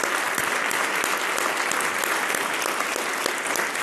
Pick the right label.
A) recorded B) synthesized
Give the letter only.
A